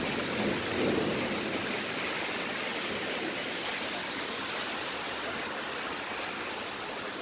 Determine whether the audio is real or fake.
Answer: real